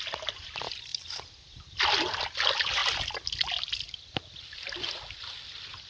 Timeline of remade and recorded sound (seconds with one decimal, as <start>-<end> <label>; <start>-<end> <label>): 0.0-5.9 recorded